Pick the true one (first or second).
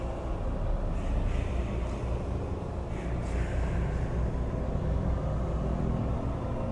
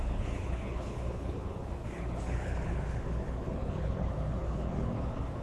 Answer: first